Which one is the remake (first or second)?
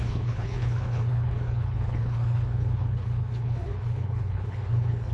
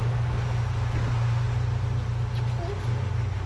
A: first